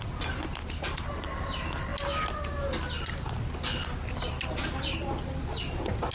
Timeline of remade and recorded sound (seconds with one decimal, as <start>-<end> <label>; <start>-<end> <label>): 0.0-6.1 recorded